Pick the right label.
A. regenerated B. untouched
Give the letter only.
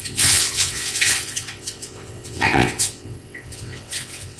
A